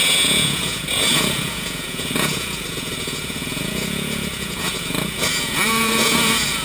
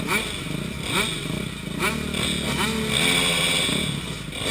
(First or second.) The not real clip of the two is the first